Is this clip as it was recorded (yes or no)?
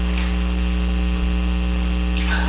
yes